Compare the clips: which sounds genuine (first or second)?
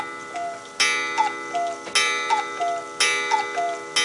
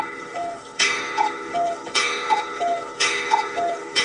first